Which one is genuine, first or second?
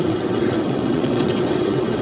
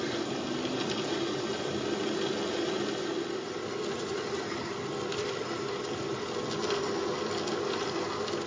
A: second